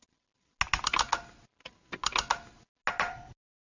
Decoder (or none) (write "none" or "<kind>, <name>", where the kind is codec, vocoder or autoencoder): none